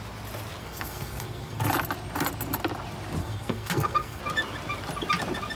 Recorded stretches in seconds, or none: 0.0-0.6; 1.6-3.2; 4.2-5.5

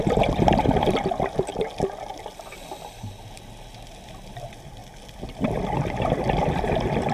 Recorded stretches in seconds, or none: 1.5-3.7; 4.8-6.0

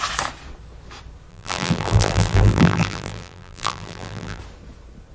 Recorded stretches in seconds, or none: 0.0-1.3; 4.4-5.1

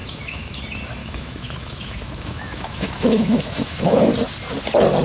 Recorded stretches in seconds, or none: 0.6-1.0; 4.0-5.0

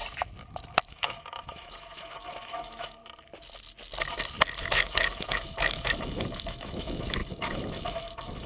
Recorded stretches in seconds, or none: 0.0-0.9; 3.0-4.6

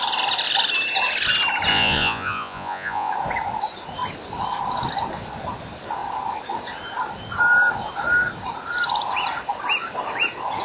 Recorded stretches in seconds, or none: 0.0-1.7; 3.1-10.6

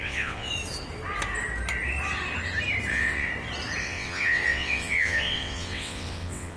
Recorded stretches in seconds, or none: 0.5-2.9; 3.3-3.8

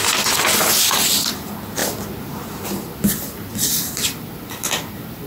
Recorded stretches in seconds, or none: 0.0-5.3